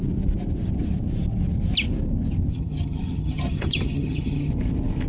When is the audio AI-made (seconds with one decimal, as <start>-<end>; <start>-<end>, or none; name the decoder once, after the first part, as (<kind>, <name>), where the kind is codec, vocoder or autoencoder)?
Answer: 2.5-4.5 (vocoder, HiFi-GAN)